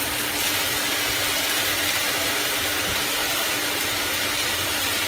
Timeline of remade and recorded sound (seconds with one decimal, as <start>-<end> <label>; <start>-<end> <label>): 0.0-3.2 recorded; 3.2-4.1 remade; 4.1-5.1 recorded